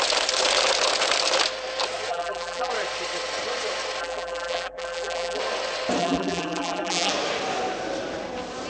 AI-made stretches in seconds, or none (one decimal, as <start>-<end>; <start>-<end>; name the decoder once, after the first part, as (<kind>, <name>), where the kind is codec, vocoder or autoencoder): 2.1-2.7 (vocoder, BigVGAN v2); 4.0-5.4; 6.0-7.1